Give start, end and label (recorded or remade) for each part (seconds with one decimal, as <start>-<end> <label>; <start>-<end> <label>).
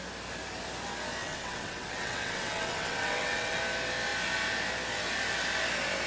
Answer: 0.0-1.2 recorded; 1.2-3.6 remade; 3.6-6.1 recorded